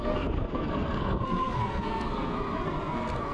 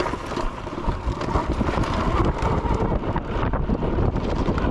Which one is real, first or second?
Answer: second